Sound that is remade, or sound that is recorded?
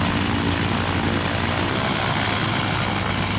recorded